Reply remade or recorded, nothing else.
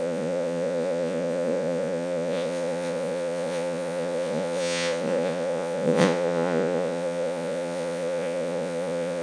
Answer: remade